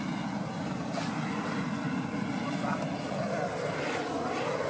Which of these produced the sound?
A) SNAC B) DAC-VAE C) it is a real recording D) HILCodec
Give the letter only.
C